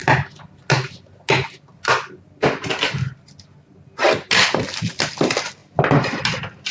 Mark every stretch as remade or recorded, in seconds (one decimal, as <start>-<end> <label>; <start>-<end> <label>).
0.0-6.7 recorded